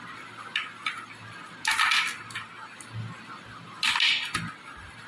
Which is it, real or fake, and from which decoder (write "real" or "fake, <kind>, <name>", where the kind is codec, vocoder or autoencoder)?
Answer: real